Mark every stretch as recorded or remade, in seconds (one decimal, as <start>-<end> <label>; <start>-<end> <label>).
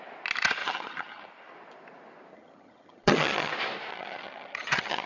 0.0-0.6 recorded; 0.6-1.3 remade; 1.3-2.3 recorded; 2.3-3.5 remade; 3.5-3.9 recorded; 3.9-5.1 remade